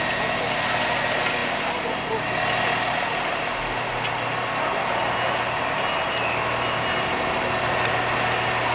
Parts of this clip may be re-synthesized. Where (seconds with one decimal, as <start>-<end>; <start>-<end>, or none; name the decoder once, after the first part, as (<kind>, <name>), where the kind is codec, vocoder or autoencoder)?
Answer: none